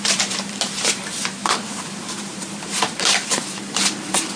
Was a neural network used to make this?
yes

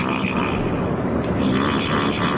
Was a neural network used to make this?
no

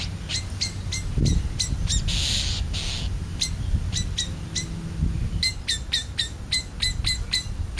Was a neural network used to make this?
no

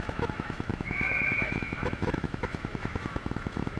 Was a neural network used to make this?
yes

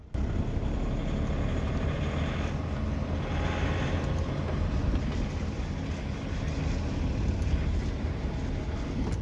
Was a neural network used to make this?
no